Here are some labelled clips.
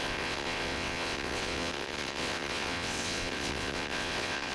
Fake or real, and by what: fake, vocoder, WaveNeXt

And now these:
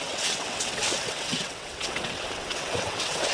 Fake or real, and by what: fake, vocoder, WaveNeXt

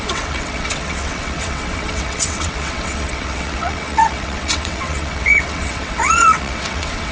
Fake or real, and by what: fake, vocoder, WaveNeXt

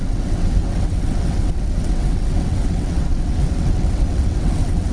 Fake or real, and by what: fake, vocoder, WaveNeXt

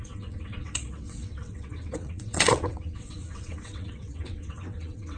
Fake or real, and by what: fake, vocoder, WaveNeXt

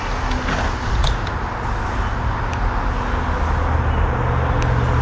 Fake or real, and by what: real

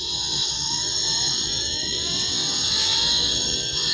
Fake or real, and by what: fake, vocoder, WaveNeXt